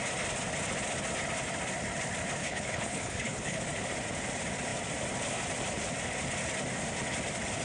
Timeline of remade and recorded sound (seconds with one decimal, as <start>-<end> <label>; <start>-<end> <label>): 0.0-2.4 recorded; 2.4-3.6 remade; 3.6-7.6 recorded